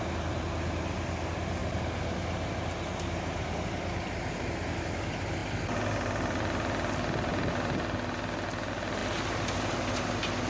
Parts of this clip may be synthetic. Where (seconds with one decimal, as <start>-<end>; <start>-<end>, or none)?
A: 9.0-9.9